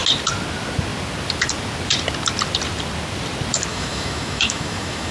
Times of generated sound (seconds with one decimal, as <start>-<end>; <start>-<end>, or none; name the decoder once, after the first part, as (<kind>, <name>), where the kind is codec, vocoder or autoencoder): 3.7-5.1 (autoencoder, DAC-VAE)